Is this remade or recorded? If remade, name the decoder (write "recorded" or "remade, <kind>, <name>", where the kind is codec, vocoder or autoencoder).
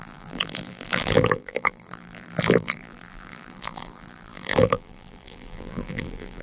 remade, vocoder, BigVGAN v2